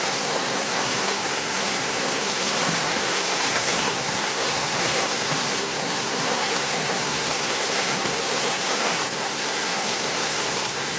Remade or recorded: remade